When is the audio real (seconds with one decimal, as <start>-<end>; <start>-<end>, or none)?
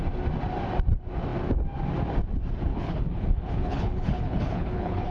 0.0-2.7